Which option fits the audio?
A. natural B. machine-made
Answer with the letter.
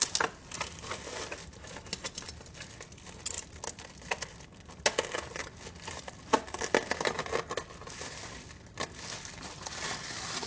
A